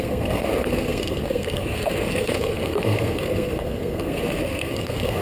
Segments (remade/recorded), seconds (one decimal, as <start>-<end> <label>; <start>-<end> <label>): 0.0-5.2 remade